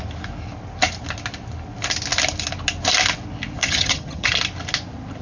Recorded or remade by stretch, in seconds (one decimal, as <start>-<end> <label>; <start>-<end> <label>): 0.0-3.6 recorded; 3.6-4.3 remade; 4.3-5.2 recorded